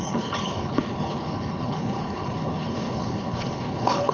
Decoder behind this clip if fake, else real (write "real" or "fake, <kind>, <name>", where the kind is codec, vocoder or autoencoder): fake, codec, HILCodec